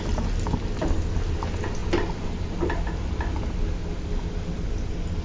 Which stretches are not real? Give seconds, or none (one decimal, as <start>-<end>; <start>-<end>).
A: none